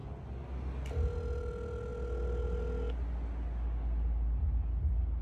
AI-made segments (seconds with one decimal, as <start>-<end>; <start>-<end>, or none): none